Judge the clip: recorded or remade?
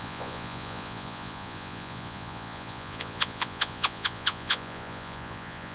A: remade